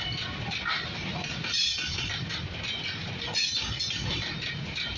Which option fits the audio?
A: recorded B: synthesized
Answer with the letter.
A